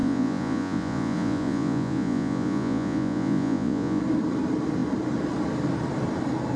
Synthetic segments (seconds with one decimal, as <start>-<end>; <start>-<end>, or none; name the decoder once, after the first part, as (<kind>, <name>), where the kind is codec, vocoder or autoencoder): 0.0-4.0 (vocoder, Vocos)